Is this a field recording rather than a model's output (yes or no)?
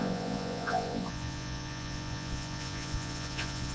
no